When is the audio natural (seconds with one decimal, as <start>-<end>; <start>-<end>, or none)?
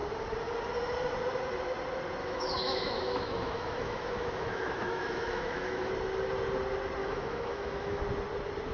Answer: 0.0-2.2; 5.9-7.0; 8.0-8.7